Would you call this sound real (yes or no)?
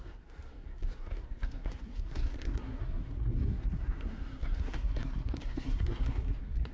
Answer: no